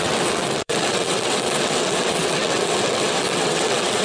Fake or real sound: fake